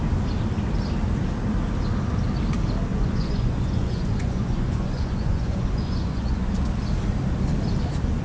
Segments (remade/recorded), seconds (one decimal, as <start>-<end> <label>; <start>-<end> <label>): 0.0-2.9 recorded; 2.9-6.5 remade; 6.5-8.2 recorded